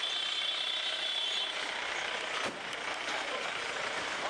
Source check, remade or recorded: remade